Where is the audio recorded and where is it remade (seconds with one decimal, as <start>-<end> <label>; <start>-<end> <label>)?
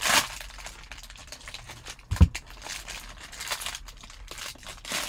0.0-1.2 recorded; 1.2-4.3 remade; 4.3-5.1 recorded